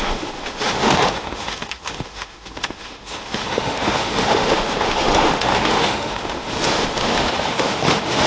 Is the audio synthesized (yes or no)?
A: yes